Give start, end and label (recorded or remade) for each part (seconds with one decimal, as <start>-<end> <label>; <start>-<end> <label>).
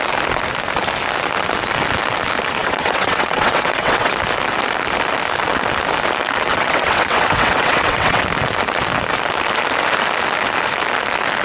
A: 0.0-2.6 recorded; 2.6-4.1 remade; 4.1-6.5 recorded; 6.5-8.3 remade; 8.3-11.4 recorded